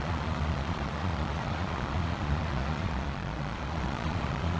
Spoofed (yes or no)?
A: yes